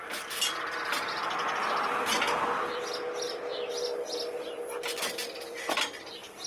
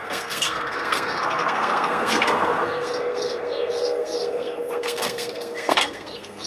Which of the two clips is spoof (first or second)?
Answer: second